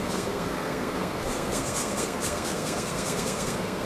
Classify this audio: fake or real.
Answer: fake